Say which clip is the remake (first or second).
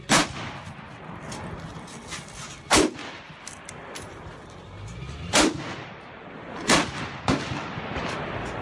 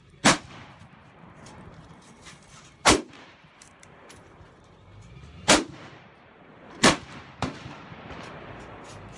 second